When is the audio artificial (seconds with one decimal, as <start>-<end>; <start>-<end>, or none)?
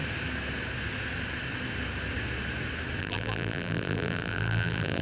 3.0-5.0